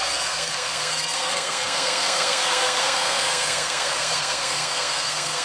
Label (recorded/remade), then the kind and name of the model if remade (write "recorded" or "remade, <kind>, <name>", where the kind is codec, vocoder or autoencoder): remade, codec, SNAC